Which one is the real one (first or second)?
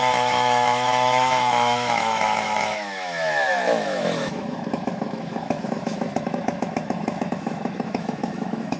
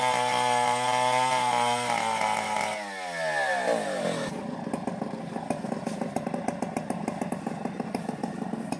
second